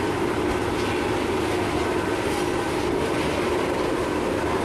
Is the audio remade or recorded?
recorded